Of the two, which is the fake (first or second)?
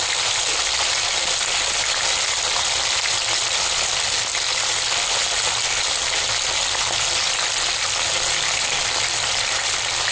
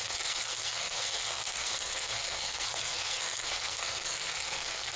second